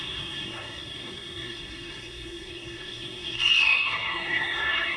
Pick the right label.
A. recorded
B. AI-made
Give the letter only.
B